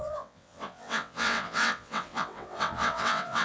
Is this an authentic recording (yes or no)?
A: no